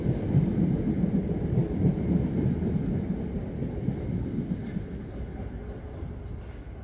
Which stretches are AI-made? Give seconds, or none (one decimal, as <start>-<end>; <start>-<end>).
none